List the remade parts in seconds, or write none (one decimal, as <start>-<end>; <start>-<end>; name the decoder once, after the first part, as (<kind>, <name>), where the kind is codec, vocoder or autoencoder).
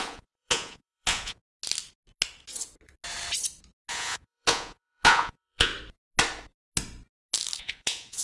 0.0-1.4 (vocoder, Vocos); 3.9-5.7; 7.6-8.2